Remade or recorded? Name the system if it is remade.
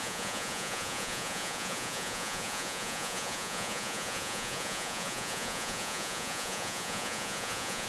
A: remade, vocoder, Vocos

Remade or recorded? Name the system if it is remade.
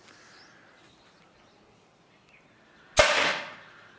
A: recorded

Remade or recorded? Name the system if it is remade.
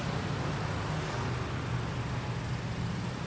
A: recorded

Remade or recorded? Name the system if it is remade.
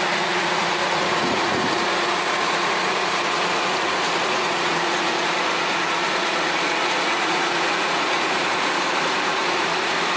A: remade, vocoder, Vocos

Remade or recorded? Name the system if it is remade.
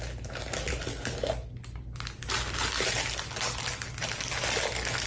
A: recorded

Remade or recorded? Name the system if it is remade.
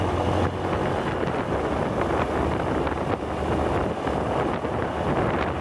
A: recorded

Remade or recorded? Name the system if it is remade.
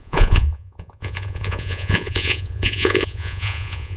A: remade, vocoder, Vocos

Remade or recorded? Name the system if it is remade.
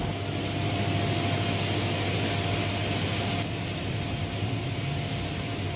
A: recorded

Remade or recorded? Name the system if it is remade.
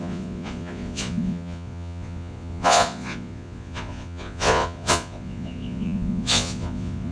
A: remade, vocoder, Vocos